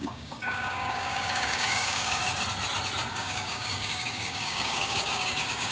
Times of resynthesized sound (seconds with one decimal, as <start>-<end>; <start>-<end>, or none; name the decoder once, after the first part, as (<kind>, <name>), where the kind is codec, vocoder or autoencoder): 0.0-2.2 (codec, DAC); 3.1-5.7